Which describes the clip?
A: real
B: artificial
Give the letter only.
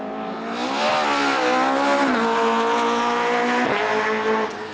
A